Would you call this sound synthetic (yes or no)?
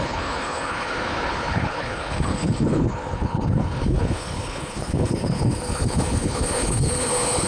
yes